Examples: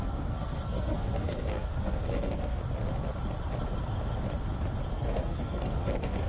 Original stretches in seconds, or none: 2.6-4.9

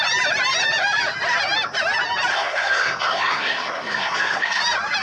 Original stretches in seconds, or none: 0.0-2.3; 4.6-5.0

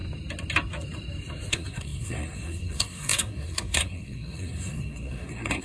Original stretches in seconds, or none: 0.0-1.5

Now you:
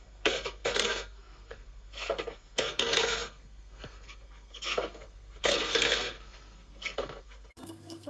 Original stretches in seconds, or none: none

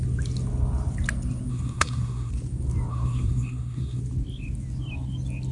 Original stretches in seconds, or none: 0.0-1.5; 2.3-2.9; 4.0-5.5

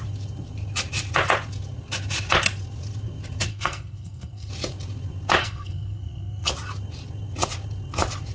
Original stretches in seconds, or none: 0.0-3.5; 4.5-5.4; 6.5-8.3

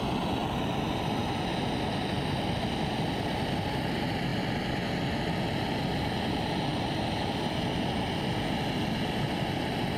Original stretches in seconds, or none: 0.0-10.0